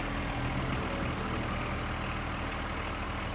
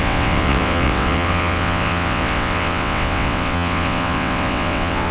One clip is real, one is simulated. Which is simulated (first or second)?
second